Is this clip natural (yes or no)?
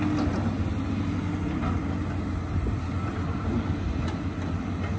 yes